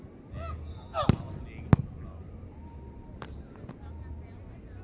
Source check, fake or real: real